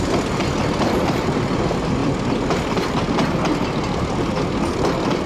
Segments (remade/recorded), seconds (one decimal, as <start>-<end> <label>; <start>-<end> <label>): 0.0-5.3 recorded